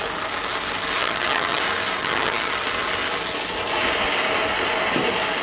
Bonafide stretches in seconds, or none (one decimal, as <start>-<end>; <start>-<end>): 0.0-1.0; 1.6-2.0; 2.5-5.4